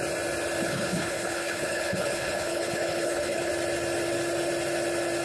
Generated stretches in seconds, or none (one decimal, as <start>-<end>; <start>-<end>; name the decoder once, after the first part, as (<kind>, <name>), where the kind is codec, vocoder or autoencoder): 0.6-3.5 (codec, HILCodec)